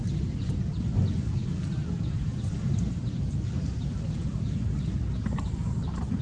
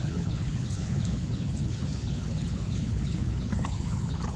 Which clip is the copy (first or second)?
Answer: second